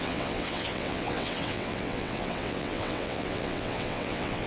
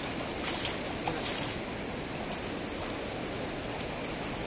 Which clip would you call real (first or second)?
second